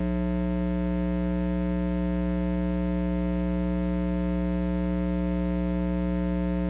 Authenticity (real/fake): real